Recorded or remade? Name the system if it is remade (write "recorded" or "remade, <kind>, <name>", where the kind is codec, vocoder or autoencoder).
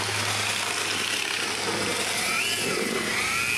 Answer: recorded